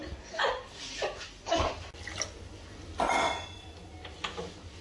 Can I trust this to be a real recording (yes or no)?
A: yes